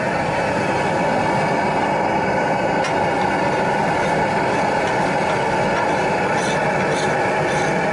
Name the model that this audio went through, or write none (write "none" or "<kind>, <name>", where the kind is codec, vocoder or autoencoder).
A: none